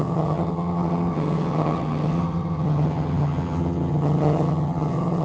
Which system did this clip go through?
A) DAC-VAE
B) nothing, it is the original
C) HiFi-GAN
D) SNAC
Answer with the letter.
C